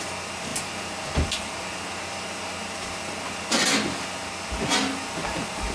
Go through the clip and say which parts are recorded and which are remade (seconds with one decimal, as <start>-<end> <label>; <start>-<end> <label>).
0.0-5.7 recorded